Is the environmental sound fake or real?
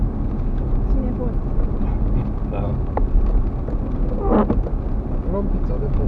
real